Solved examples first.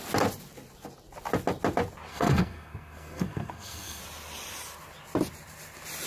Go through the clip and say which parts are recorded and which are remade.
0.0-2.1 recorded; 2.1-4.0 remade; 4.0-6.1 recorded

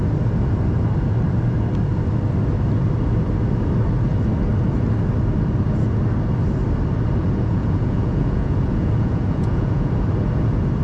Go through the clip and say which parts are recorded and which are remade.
0.0-7.2 recorded; 7.2-9.9 remade; 9.9-10.8 recorded

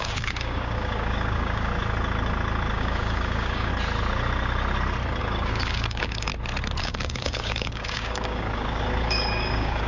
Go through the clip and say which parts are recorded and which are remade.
0.0-1.7 remade; 1.7-2.7 recorded; 2.7-3.7 remade; 3.7-5.2 recorded; 5.2-6.3 remade; 6.3-6.8 recorded; 6.8-9.9 remade

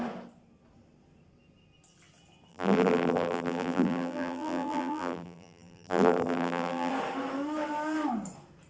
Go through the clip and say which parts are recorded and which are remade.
0.0-2.5 recorded; 2.5-6.9 remade; 6.9-8.7 recorded

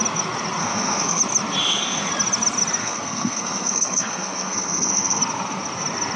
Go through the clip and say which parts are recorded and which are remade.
0.0-0.6 recorded; 0.6-1.2 remade; 1.2-1.6 recorded; 1.6-2.1 remade; 2.1-2.8 recorded; 2.8-5.2 remade; 5.2-6.2 recorded